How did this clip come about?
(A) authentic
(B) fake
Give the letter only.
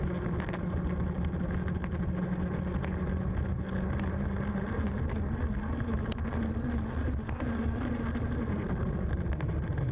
A